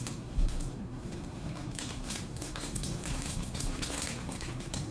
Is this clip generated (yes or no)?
yes